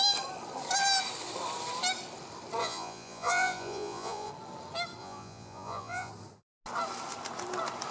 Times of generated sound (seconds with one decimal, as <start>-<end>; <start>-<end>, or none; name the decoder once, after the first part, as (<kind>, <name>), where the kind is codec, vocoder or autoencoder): 2.6-4.3 (vocoder, Vocos); 5.0-6.1